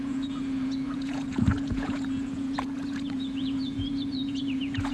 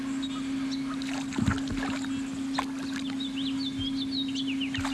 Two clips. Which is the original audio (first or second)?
second